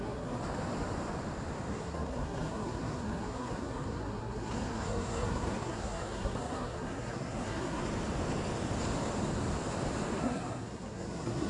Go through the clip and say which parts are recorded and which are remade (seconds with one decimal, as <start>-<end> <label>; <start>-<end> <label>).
0.0-0.4 remade; 0.4-1.7 recorded; 1.7-7.8 remade; 7.8-10.2 recorded; 10.2-11.5 remade